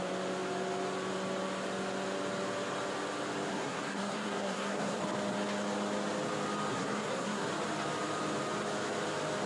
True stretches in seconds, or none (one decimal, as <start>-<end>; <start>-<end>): 0.0-3.5; 5.0-6.7; 7.5-9.5